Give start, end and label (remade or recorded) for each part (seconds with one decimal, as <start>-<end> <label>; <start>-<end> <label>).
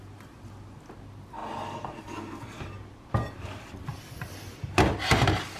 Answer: 0.0-1.4 recorded; 1.4-2.0 remade; 2.0-5.6 recorded